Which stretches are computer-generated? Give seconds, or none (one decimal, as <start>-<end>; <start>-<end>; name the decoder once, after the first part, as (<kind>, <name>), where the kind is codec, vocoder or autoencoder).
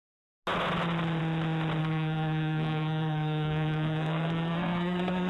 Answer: 1.8-5.3 (codec, SNAC)